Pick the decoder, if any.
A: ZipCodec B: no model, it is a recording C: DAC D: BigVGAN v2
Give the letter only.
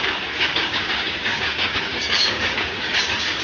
C